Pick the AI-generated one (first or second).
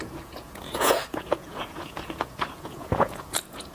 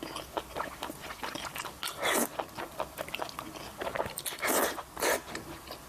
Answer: first